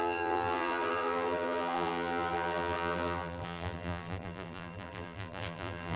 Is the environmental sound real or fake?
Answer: fake